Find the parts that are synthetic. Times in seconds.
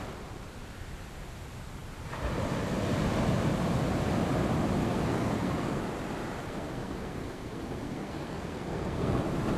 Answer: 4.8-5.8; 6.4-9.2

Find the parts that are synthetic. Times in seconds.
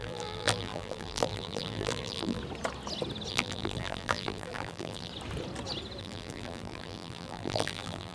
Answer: 0.0-2.4; 3.3-5.1; 6.0-8.1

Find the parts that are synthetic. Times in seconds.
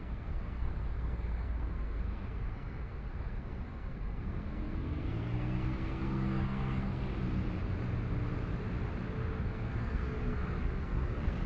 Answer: 0.0-7.0; 9.4-11.5